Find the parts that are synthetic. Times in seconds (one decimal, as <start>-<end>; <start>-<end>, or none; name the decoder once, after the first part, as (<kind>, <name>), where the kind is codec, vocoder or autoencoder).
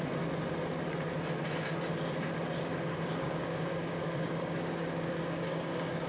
3.2-6.1 (codec, DAC)